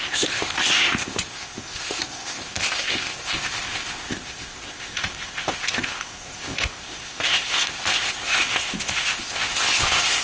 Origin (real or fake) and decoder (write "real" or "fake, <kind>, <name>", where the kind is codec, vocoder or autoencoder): fake, codec, ZipCodec